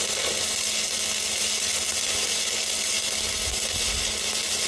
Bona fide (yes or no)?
yes